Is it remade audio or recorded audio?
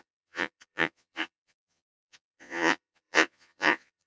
remade